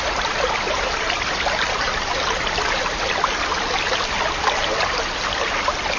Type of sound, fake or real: real